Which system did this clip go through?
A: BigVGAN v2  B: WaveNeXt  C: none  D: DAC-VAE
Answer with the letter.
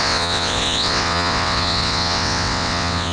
B